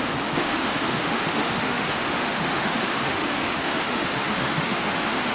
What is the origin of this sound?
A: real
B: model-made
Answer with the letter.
B